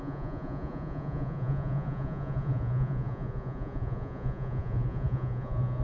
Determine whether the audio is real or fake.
fake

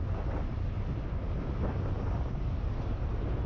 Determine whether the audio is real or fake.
real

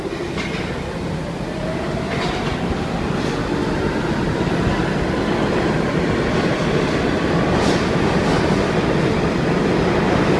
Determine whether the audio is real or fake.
real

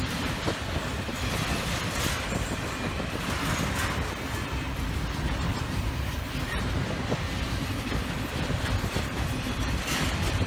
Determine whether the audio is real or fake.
real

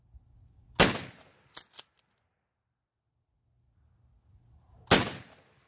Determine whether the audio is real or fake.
real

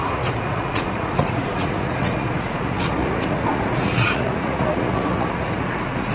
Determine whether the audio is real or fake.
fake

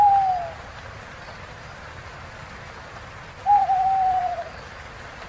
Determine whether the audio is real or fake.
real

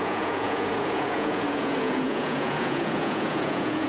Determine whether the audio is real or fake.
fake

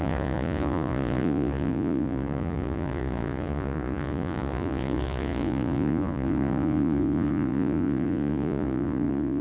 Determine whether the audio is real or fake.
fake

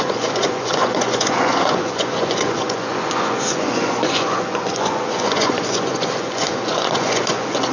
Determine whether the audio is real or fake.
fake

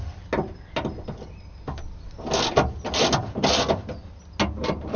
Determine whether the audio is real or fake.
real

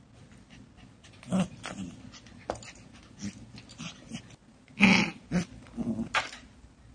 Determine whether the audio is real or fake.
real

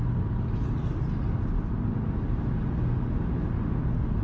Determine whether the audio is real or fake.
real